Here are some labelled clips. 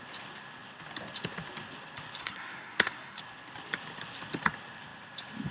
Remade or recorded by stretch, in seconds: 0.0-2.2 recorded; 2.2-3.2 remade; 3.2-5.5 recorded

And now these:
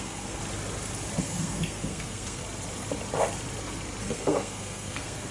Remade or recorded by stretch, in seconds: 0.0-0.4 remade; 0.4-1.2 recorded; 1.2-2.4 remade; 2.4-4.0 recorded; 4.0-5.3 remade

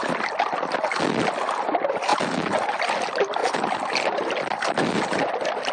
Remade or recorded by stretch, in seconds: 0.0-5.7 recorded

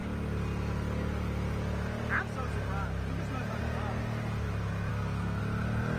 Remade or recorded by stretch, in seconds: 0.0-4.9 recorded; 4.9-5.4 remade; 5.4-6.0 recorded

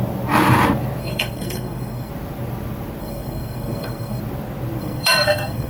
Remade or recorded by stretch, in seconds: 0.0-1.0 recorded; 1.0-2.1 remade; 2.1-3.0 recorded; 3.0-4.2 remade; 4.2-4.8 recorded; 4.8-5.7 remade

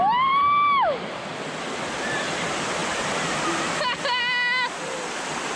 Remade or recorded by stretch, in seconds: 0.0-5.6 recorded